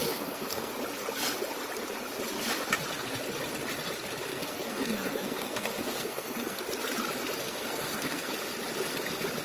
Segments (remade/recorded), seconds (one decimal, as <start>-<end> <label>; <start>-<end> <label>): 0.0-0.7 remade; 0.7-4.3 recorded; 4.3-6.6 remade; 6.6-7.4 recorded; 7.4-8.3 remade; 8.3-9.4 recorded